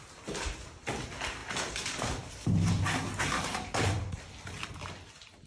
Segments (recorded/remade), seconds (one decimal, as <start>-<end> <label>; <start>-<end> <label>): 0.0-1.4 recorded; 1.4-4.7 remade; 4.7-5.5 recorded